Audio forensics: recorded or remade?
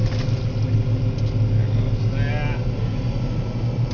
recorded